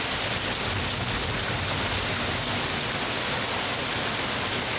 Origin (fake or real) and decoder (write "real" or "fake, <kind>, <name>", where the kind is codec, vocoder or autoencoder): real